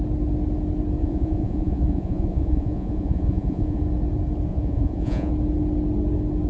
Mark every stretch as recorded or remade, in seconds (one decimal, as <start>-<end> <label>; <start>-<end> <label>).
0.0-1.0 recorded; 1.0-3.8 remade; 3.8-4.5 recorded; 4.5-5.3 remade; 5.3-6.5 recorded